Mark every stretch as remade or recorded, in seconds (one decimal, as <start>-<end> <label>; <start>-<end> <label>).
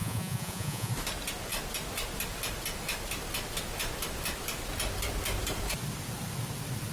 0.0-0.9 remade; 0.9-6.9 recorded